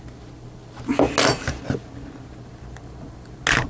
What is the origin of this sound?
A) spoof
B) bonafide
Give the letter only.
B